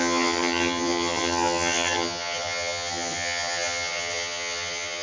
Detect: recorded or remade remade